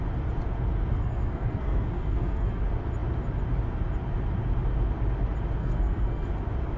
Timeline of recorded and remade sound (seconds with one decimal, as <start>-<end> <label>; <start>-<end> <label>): 0.0-0.9 recorded; 0.9-2.6 remade; 2.6-5.6 recorded; 5.6-6.3 remade; 6.3-6.8 recorded